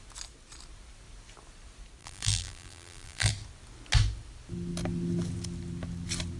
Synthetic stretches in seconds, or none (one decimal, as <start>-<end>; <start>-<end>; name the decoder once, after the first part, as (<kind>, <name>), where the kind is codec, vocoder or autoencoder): 2.0-3.3 (vocoder, BigVGAN v2)